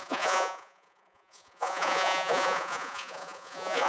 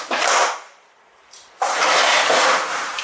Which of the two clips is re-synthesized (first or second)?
first